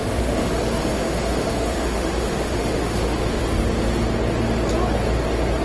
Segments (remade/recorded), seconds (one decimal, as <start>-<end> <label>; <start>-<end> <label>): 0.0-0.5 remade; 0.5-0.9 recorded; 0.9-3.4 remade; 3.4-5.6 recorded